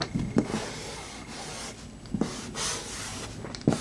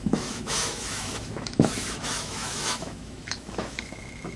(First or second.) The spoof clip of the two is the second